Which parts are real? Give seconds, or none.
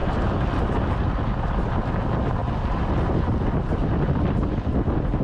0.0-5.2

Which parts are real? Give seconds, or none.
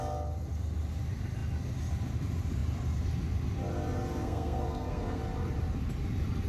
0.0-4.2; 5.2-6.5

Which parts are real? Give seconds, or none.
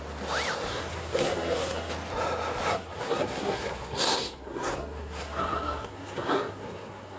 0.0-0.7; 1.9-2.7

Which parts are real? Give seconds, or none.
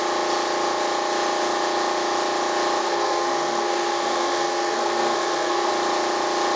0.0-2.8; 5.7-6.6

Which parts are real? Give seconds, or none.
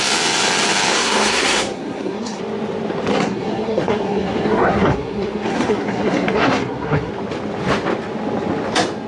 0.0-0.9; 2.4-3.1; 7.1-9.1